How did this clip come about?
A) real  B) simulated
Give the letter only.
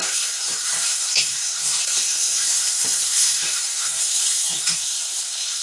B